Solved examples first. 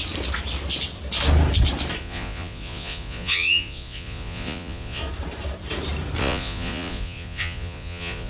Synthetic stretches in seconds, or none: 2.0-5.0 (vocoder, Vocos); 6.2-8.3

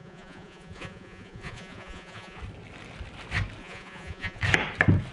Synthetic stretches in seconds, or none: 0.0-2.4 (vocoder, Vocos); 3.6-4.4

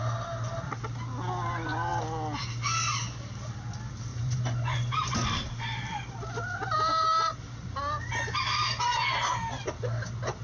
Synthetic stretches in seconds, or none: 4.1-5.3 (vocoder, Vocos)

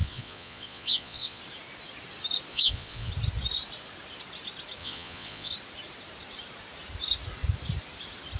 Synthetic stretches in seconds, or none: 0.0-1.4 (vocoder, Vocos); 2.5-3.1; 4.8-5.5